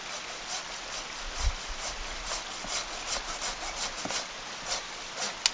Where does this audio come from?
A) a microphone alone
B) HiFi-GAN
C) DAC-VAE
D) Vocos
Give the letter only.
A